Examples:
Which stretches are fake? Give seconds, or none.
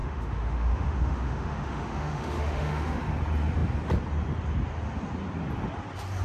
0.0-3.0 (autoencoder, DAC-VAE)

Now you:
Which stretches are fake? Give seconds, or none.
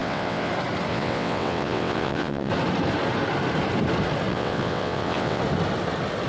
0.0-0.5 (vocoder, WaveNeXt); 0.9-2.5; 4.3-5.4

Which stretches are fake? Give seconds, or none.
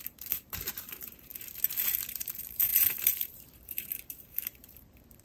0.0-1.3 (vocoder, BigVGAN v2); 2.1-5.2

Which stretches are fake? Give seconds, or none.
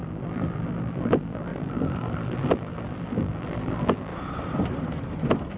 0.0-4.1 (vocoder, BigVGAN v2)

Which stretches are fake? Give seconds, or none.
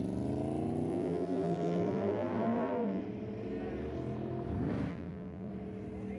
0.9-3.0 (vocoder, BigVGAN v2); 4.9-5.5